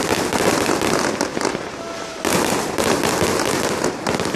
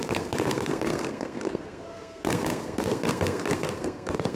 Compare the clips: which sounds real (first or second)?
first